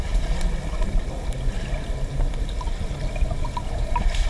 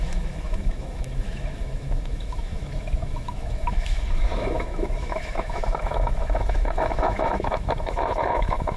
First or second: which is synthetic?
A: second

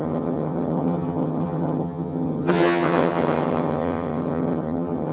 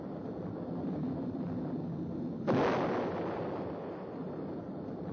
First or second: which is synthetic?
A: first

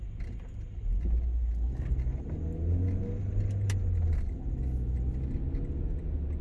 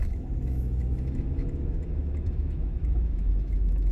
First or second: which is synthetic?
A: second